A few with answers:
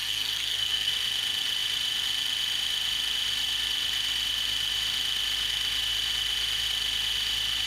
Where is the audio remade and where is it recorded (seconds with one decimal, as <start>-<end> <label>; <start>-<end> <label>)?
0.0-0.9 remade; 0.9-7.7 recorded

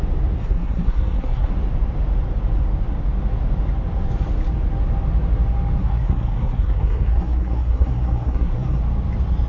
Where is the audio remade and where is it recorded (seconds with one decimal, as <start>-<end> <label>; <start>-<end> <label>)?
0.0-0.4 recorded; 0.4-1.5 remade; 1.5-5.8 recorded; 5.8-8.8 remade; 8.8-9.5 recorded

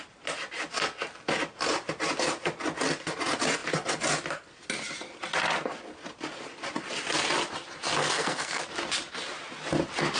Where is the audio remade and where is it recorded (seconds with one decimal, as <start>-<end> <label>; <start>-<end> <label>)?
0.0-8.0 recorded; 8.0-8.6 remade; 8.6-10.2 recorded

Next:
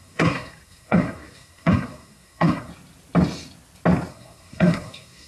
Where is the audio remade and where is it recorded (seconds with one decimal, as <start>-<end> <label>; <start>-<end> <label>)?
0.0-2.7 remade; 2.7-4.1 recorded; 4.1-5.3 remade

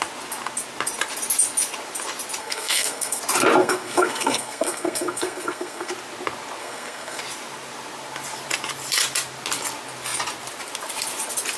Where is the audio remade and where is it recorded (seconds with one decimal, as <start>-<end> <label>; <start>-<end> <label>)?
0.0-2.4 recorded; 2.4-3.2 remade; 3.2-3.6 recorded; 3.6-5.9 remade; 5.9-6.6 recorded; 6.6-7.2 remade; 7.2-11.6 recorded

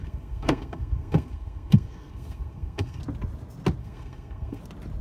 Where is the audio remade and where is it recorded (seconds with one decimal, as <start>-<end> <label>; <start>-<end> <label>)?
0.0-3.0 remade; 3.0-3.8 recorded; 3.8-4.6 remade; 4.6-5.0 recorded

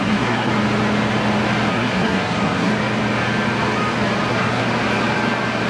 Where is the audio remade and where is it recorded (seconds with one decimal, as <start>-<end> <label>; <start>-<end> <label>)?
0.0-0.5 remade; 0.5-1.7 recorded; 1.7-2.7 remade; 2.7-4.3 recorded; 4.3-4.7 remade; 4.7-5.7 recorded